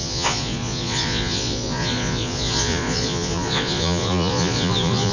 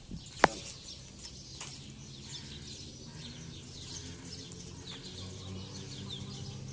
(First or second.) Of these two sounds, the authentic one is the second